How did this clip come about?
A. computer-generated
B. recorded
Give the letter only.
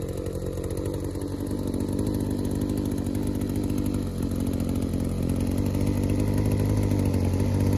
B